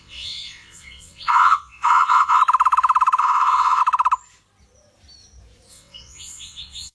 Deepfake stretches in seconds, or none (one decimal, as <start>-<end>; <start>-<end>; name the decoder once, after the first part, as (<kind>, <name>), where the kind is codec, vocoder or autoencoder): 0.0-2.4 (vocoder, WaveNeXt); 3.2-3.8; 5.7-6.9